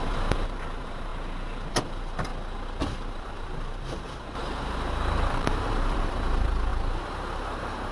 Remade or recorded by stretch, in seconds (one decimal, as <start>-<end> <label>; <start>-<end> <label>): 0.0-1.1 remade; 1.1-1.7 recorded; 1.7-2.3 remade; 2.3-3.0 recorded; 3.0-7.9 remade